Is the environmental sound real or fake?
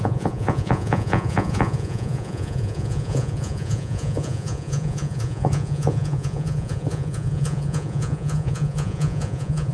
fake